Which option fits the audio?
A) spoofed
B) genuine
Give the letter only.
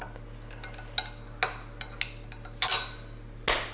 B